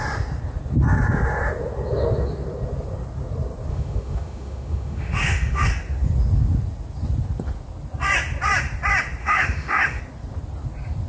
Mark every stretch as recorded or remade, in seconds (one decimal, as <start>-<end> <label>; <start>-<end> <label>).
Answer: 0.0-3.7 recorded; 3.7-5.7 remade; 5.7-9.2 recorded; 9.2-10.0 remade; 10.0-11.1 recorded